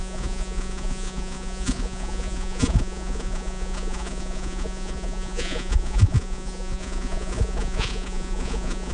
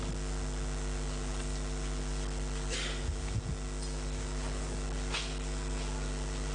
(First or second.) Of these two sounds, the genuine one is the second